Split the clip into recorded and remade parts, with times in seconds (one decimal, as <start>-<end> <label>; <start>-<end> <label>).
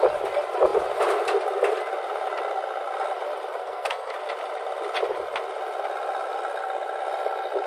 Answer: 0.0-3.6 recorded; 3.6-4.1 remade; 4.1-7.7 recorded